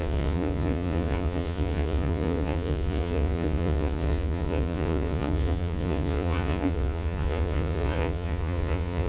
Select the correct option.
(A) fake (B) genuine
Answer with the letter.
A